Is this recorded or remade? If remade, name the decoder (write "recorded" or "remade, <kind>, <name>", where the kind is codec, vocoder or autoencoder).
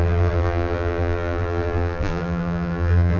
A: remade, vocoder, BigVGAN v2